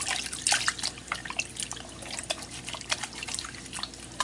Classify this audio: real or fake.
real